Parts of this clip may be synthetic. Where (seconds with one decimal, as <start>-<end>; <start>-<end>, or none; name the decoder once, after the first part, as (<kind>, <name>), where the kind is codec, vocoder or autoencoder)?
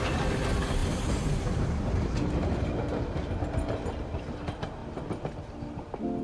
none